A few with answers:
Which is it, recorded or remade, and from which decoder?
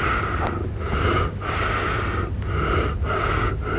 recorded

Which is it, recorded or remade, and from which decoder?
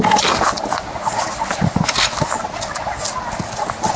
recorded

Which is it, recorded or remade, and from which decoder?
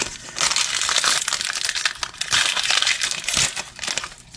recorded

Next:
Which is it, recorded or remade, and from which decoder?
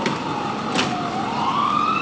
recorded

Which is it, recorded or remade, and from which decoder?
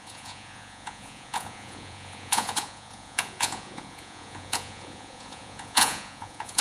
remade, vocoder, Vocos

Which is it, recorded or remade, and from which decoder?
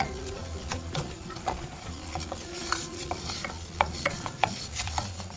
remade, vocoder, Vocos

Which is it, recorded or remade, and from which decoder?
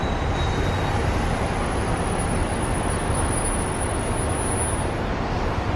recorded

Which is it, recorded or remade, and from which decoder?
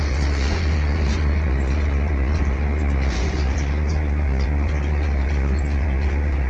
remade, vocoder, Vocos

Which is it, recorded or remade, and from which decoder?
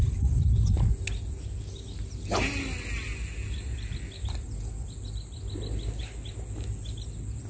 recorded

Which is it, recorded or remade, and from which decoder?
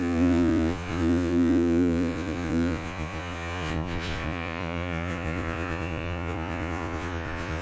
remade, vocoder, Vocos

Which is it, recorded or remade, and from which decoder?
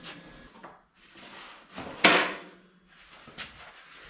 recorded